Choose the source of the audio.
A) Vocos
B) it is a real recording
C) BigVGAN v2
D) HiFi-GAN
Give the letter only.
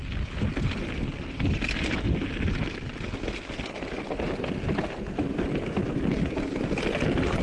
B